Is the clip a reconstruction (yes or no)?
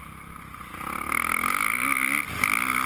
no